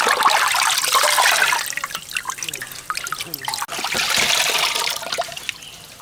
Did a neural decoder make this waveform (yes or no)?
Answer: no